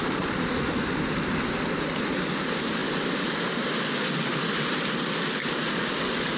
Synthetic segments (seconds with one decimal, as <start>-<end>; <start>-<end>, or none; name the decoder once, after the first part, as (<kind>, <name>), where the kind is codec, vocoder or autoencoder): none